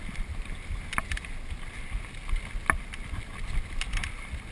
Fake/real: real